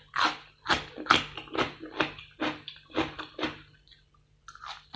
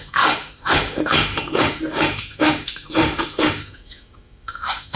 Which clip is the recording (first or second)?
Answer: first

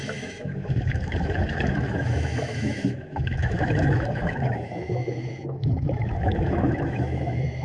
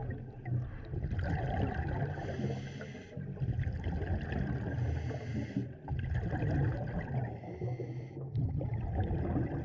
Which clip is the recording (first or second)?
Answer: second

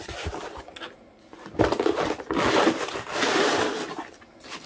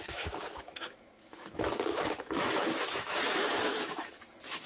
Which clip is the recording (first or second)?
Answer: first